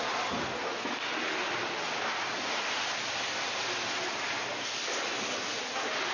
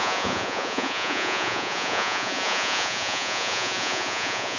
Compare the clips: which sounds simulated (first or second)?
second